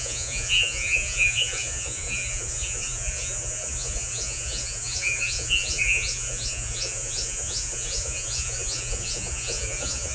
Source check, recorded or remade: remade